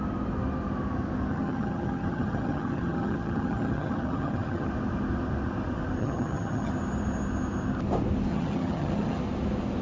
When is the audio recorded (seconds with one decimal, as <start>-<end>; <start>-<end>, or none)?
0.0-1.3; 4.7-6.0; 6.7-8.3; 9.2-9.8

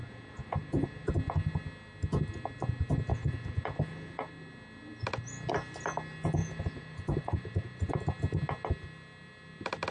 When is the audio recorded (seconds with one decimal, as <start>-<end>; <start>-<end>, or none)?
1.1-3.1; 4.3-6.4; 7.9-9.9

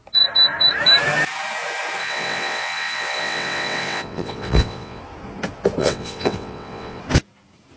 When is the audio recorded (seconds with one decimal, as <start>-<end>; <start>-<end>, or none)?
0.0-2.0; 5.0-5.8; 7.0-7.8

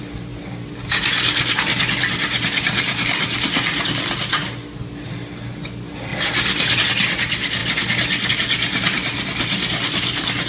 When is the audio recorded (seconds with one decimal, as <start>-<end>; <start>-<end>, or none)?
0.0-10.5

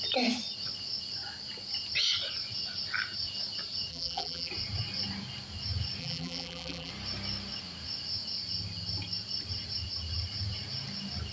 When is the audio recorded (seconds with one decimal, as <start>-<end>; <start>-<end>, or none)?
0.0-3.9; 4.5-6.0; 6.9-11.3

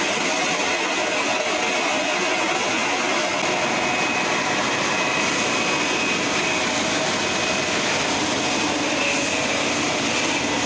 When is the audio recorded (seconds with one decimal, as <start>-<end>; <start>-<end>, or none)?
0.0-10.7

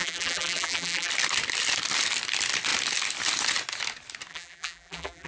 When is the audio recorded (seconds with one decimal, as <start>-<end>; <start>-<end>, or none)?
1.1-4.3